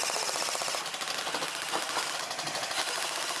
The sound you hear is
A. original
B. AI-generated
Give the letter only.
A